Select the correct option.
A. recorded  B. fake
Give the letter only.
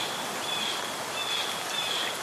A